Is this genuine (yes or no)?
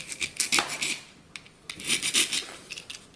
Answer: yes